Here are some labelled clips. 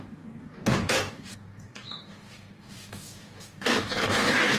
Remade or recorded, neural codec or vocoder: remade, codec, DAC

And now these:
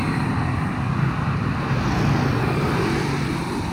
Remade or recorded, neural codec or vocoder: recorded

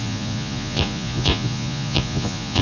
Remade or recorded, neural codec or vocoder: remade, vocoder, Vocos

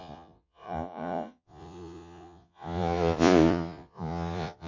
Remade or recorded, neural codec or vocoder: remade, vocoder, Vocos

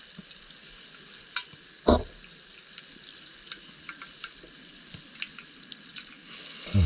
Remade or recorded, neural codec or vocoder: recorded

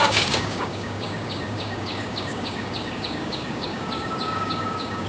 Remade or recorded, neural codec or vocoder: remade, codec, DAC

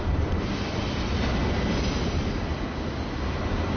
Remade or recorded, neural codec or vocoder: recorded